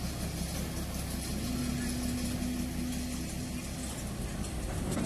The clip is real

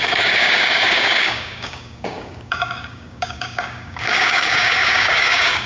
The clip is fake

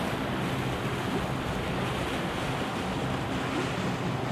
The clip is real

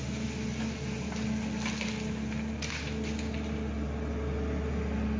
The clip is real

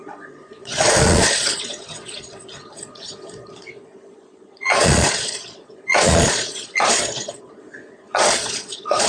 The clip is fake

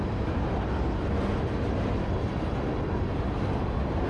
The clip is real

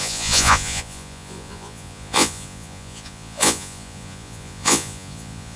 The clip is fake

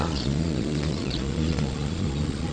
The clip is fake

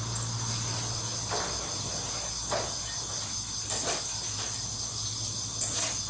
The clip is real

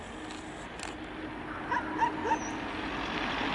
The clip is real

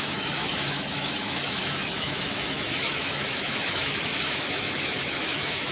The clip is fake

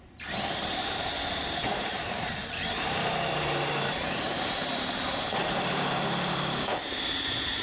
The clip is fake